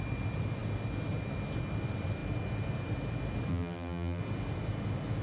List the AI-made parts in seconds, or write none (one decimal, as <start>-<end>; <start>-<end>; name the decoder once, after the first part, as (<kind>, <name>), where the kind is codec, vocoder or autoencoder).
3.5-4.2 (vocoder, BigVGAN v2)